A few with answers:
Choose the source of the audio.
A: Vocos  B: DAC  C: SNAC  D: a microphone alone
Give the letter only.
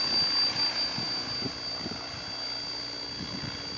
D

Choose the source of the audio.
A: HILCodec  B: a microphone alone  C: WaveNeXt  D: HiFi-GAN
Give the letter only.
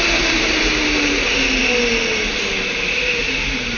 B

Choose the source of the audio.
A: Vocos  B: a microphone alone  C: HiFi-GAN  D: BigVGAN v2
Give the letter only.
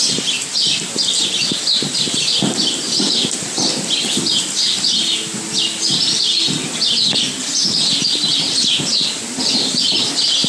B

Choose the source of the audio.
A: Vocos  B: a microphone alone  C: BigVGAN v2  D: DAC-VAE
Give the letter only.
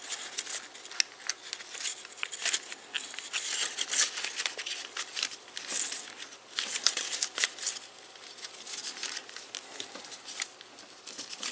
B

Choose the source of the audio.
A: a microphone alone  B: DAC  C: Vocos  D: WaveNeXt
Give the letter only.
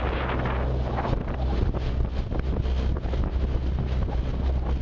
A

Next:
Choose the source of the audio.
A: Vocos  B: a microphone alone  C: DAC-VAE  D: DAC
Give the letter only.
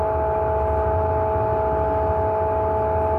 B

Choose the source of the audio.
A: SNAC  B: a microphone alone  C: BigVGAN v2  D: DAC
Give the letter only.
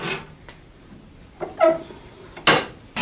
B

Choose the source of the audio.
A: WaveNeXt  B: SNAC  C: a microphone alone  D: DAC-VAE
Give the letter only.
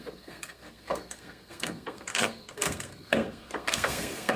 B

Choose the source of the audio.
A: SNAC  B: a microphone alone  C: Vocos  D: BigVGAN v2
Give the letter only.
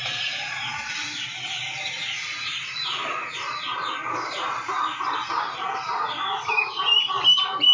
D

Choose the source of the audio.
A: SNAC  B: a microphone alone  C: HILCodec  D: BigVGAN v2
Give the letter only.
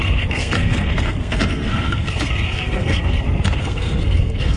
A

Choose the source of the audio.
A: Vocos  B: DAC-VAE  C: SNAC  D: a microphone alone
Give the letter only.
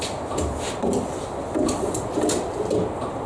D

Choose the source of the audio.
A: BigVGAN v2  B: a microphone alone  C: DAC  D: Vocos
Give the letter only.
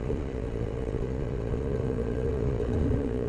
D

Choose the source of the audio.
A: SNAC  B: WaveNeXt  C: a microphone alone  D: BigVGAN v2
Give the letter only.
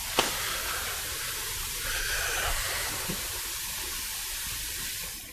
C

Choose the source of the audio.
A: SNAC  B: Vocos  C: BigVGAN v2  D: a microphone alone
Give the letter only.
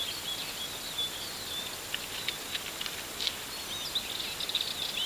D